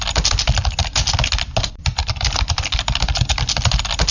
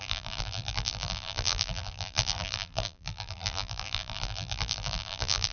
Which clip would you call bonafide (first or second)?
first